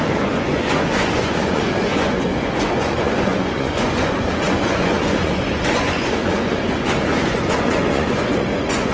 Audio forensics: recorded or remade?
remade